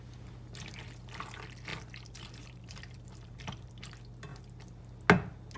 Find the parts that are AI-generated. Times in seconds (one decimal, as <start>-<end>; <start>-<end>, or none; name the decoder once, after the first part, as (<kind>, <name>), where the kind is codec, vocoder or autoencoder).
1.7-3.7 (vocoder, BigVGAN v2)